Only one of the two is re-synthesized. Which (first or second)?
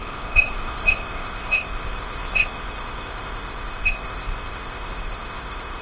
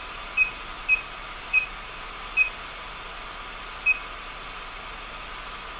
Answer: first